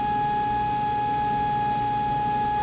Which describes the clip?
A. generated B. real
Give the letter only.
B